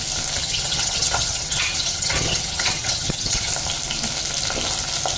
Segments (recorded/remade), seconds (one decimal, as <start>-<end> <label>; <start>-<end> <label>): 0.0-0.4 recorded; 0.4-3.5 remade; 3.5-5.2 recorded